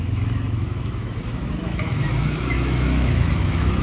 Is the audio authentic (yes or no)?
no